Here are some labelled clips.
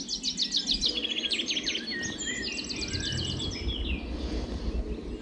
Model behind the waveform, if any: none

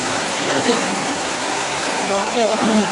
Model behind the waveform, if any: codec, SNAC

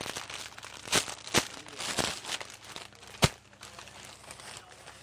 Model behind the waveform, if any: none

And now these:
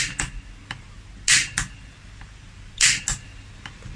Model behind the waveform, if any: none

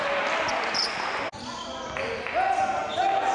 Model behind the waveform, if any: none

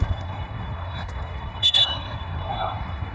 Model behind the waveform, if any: codec, SNAC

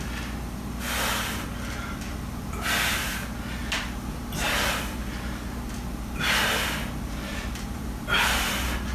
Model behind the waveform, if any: none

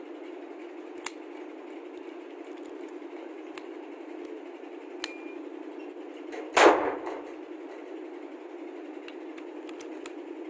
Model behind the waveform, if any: none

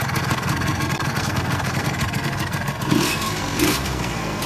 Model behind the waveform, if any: codec, SNAC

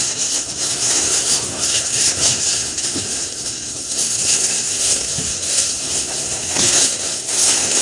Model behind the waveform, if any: codec, SNAC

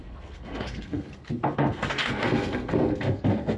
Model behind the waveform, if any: codec, SNAC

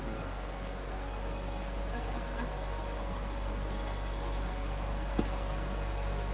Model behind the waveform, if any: codec, SNAC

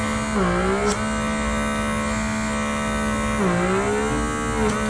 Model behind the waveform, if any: none